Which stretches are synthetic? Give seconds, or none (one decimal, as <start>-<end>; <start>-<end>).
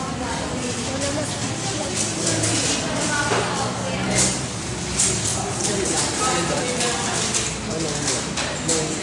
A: 5.3-6.6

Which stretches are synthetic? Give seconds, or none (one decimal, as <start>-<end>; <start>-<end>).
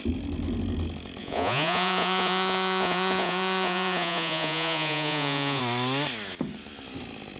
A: 1.2-5.6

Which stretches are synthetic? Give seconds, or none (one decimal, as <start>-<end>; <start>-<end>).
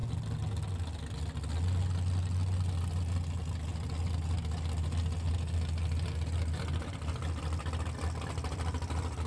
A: none